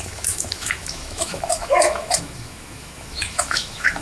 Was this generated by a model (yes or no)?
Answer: yes